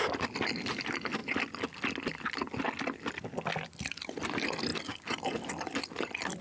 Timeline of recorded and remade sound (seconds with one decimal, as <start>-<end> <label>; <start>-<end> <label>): 0.0-6.4 recorded